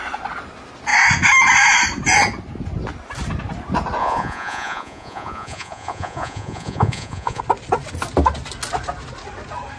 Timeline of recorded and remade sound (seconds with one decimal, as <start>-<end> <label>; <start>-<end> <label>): 0.0-4.0 recorded; 4.0-7.4 remade; 7.4-9.8 recorded